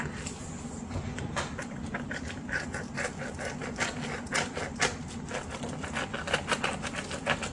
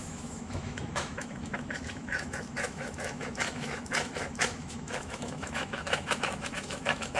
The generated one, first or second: second